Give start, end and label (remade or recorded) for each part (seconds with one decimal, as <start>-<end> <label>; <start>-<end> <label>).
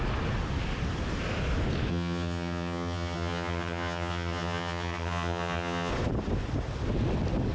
0.0-1.9 recorded; 1.9-5.9 remade; 5.9-7.5 recorded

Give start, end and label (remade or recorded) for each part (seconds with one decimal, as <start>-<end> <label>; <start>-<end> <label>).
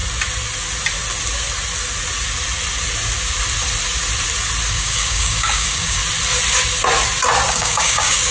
0.0-4.7 recorded; 4.7-6.0 remade; 6.0-7.5 recorded; 7.5-8.3 remade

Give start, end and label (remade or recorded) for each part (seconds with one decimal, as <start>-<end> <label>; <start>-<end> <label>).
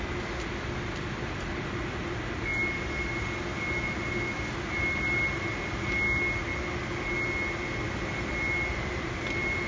0.0-9.7 recorded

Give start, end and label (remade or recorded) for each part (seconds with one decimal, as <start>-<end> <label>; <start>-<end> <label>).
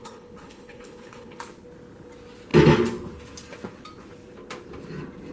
0.0-1.4 remade; 1.4-5.3 recorded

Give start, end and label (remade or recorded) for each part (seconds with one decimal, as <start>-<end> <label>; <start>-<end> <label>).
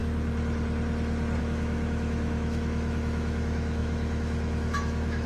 0.0-1.4 recorded; 1.4-5.3 remade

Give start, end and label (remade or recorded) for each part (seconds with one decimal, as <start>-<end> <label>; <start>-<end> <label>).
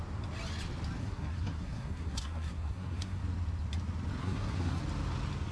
0.0-1.0 recorded; 1.0-3.2 remade; 3.2-4.2 recorded; 4.2-4.8 remade; 4.8-5.5 recorded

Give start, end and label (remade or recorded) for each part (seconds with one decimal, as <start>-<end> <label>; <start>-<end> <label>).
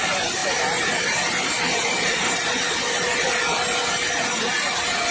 0.0-5.1 recorded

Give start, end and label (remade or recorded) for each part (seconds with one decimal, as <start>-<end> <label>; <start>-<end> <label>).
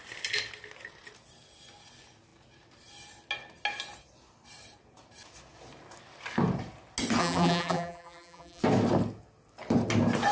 0.0-7.2 recorded; 7.2-8.6 remade; 8.6-10.3 recorded